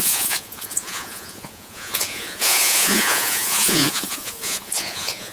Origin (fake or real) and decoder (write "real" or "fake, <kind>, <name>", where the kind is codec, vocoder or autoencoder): fake, vocoder, Vocos